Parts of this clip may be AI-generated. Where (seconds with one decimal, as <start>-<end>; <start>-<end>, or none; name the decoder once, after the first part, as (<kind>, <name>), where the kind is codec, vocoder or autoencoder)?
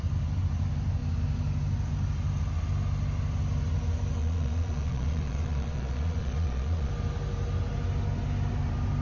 4.2-6.9 (vocoder, Vocos)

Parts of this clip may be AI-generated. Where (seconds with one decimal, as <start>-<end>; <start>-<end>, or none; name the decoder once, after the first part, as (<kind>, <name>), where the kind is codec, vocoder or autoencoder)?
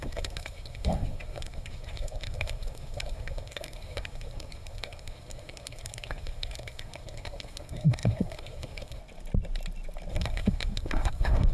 0.0-9.0 (codec, SNAC); 10.1-11.5